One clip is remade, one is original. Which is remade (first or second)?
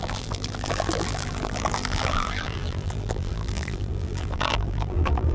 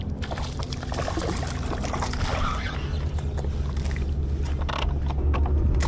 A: first